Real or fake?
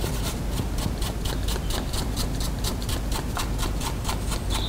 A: real